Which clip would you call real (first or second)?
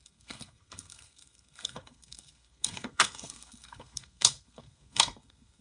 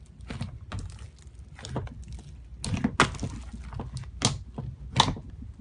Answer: second